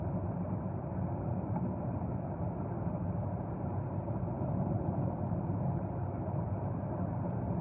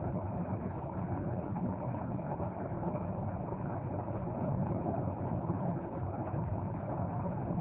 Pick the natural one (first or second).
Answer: first